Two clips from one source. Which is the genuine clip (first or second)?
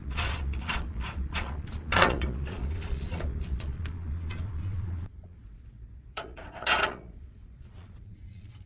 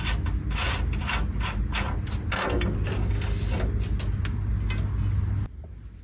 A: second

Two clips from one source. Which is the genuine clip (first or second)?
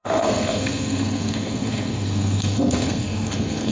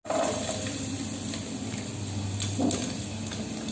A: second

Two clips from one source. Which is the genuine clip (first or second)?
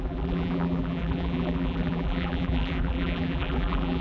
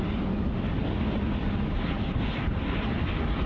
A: second